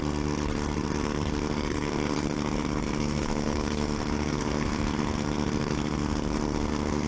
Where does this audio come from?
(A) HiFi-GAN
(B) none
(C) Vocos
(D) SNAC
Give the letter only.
D